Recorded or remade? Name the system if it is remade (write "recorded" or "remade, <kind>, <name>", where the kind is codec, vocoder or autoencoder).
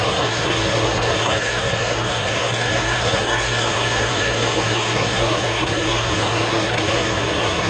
remade, codec, SNAC